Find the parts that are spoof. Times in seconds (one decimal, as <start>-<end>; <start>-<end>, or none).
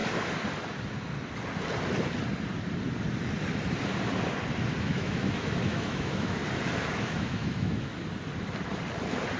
4.8-6.4; 6.9-7.9